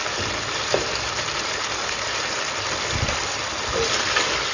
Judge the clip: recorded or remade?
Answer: remade